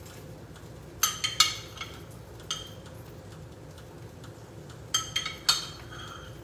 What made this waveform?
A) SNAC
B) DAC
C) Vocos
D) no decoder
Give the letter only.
D